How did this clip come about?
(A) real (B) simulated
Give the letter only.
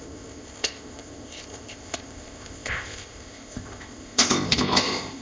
B